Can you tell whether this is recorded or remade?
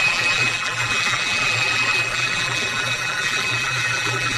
remade